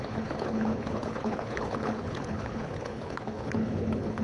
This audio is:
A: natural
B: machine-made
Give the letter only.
B